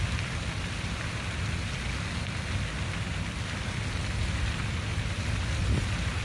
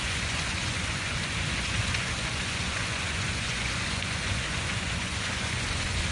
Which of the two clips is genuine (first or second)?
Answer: first